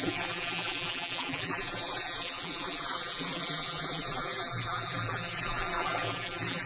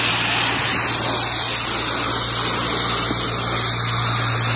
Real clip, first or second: second